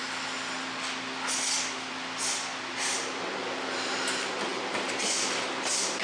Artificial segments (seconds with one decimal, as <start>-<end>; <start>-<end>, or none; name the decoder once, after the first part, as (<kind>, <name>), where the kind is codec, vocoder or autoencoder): none